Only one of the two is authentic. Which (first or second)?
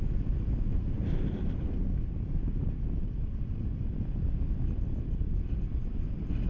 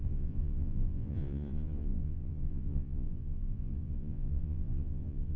first